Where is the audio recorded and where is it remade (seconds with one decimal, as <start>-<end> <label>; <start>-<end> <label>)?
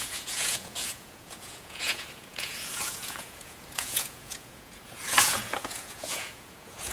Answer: 0.0-6.9 remade